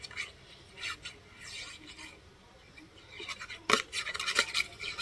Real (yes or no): yes